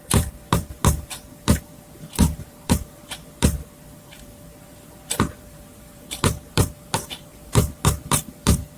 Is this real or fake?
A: fake